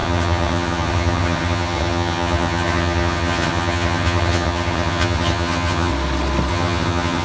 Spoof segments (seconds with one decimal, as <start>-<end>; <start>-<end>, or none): 0.0-5.9; 6.5-7.2